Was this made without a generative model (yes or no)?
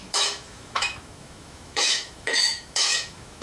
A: no